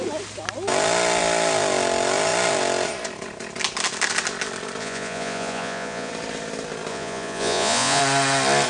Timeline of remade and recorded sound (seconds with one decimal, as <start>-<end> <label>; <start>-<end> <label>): 0.0-4.8 recorded; 4.8-6.1 remade; 6.1-6.9 recorded; 6.9-8.0 remade; 8.0-8.7 recorded